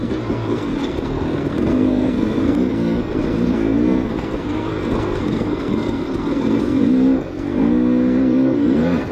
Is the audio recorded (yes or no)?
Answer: no